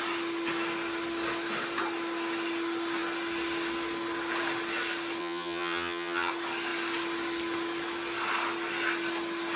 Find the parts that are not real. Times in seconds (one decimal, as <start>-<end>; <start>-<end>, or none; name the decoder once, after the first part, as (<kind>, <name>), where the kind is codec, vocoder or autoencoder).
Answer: 5.2-6.3 (vocoder, HiFi-GAN)